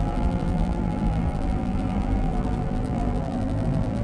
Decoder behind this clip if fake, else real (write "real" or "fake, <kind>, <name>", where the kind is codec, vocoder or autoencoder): fake, vocoder, BigVGAN v2